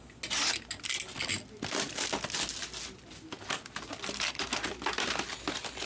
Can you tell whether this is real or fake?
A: real